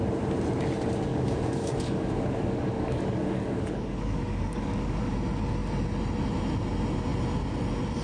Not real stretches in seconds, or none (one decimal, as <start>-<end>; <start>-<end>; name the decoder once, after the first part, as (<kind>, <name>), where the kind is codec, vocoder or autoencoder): 1.1-5.0 (codec, DAC)